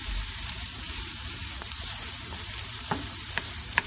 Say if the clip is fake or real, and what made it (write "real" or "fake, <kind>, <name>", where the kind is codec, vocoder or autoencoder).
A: fake, vocoder, BigVGAN v2